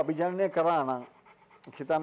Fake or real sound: real